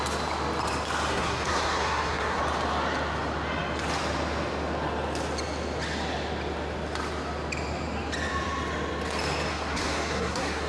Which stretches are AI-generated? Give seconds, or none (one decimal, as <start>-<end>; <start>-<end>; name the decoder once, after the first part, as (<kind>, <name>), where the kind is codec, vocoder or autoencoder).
1.1-2.4 (codec, SNAC); 9.5-10.7